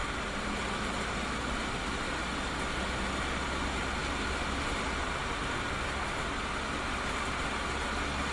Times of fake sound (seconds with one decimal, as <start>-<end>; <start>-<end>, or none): none